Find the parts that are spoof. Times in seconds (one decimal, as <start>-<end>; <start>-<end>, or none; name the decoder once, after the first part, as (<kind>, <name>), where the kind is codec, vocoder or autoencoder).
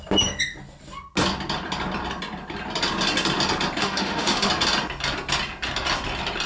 3.8-4.5 (autoencoder, DAC-VAE)